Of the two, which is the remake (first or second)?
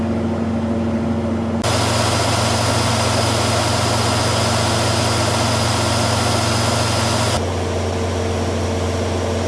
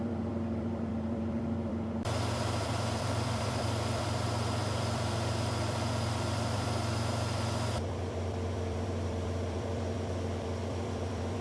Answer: second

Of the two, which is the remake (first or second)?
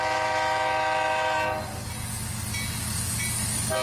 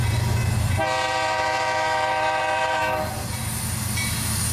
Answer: second